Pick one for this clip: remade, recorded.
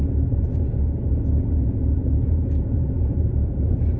remade